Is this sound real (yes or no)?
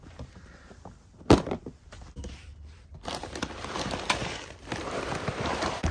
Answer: no